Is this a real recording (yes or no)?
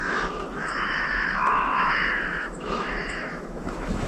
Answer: no